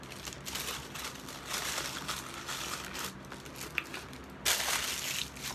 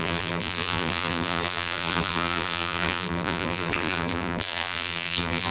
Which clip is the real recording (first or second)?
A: first